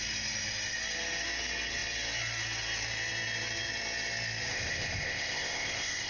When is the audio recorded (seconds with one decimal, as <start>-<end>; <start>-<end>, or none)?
0.0-4.5